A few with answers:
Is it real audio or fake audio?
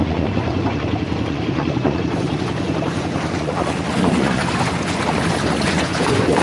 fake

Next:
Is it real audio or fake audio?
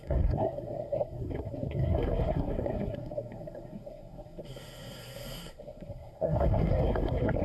fake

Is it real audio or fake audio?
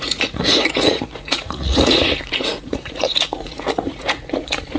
fake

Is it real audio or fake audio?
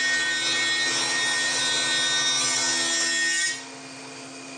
real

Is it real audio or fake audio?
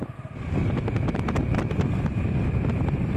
real